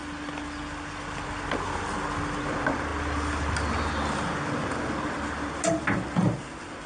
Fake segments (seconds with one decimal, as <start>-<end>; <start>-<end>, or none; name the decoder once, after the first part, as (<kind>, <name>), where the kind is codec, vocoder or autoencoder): none